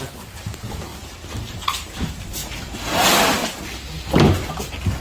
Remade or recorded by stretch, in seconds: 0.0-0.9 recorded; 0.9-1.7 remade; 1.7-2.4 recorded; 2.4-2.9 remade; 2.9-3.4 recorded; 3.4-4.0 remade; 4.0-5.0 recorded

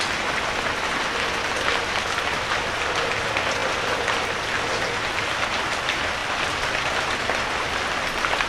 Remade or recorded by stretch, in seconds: 0.0-6.2 recorded; 6.2-7.0 remade; 7.0-8.5 recorded

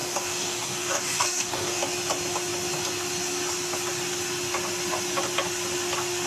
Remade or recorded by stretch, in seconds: 0.0-1.8 remade; 1.8-6.3 recorded

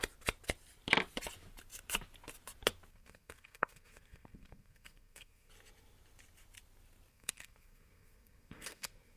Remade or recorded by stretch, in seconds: 0.0-2.9 recorded; 2.9-5.5 remade; 5.5-7.1 recorded; 7.1-9.2 remade

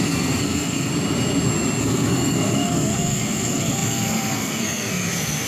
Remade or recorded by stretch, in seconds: 0.0-0.9 remade; 0.9-1.8 recorded; 1.8-5.5 remade